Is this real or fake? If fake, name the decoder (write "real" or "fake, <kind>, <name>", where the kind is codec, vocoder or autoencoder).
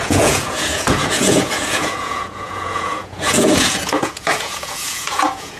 fake, vocoder, Vocos